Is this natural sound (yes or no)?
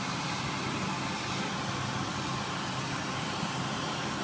yes